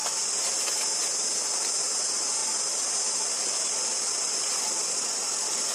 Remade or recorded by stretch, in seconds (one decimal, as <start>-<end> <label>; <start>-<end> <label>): 0.0-5.7 recorded